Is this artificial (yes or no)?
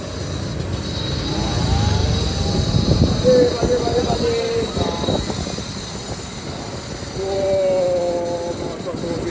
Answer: no